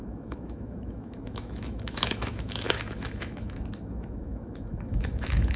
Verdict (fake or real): fake